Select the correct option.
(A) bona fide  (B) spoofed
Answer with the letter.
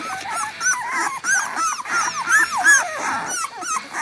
A